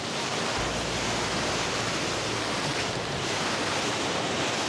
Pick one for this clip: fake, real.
real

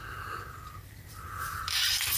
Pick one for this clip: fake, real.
fake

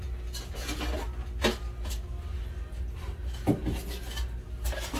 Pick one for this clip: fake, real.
real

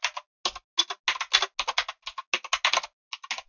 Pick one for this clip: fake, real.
real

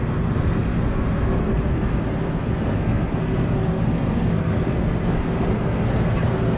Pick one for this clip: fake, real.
fake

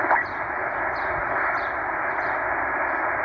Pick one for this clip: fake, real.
real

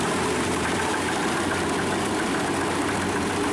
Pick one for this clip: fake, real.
fake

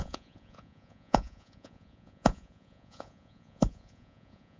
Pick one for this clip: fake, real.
fake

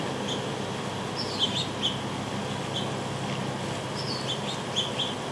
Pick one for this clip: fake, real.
real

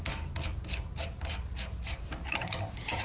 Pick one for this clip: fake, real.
real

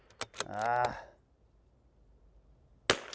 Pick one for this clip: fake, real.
real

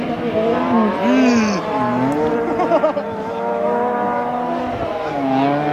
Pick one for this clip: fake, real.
real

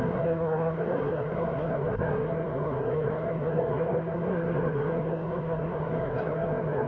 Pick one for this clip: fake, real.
fake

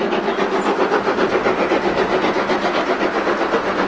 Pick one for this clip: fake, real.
real